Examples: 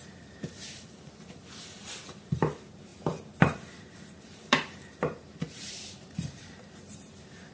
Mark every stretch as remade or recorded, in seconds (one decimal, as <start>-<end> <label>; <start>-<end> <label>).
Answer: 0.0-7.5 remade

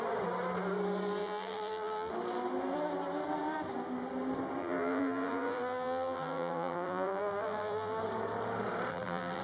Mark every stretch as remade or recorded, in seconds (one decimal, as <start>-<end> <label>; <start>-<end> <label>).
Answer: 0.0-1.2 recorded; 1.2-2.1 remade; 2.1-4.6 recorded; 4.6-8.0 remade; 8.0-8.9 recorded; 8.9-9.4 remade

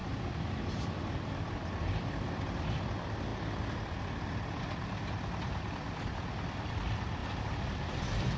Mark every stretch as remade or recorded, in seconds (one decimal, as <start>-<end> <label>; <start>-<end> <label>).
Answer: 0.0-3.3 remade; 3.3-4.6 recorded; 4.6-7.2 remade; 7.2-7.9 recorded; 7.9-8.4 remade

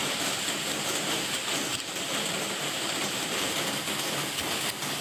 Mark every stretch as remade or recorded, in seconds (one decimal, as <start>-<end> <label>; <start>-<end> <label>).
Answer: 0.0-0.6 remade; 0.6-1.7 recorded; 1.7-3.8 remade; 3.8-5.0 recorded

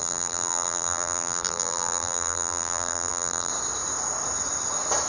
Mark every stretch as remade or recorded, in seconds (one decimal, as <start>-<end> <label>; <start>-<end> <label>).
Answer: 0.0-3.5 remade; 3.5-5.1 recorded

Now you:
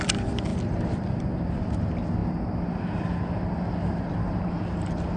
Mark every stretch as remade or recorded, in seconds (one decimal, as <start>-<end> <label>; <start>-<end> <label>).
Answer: 0.0-5.2 recorded